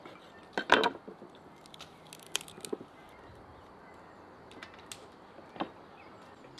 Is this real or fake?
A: real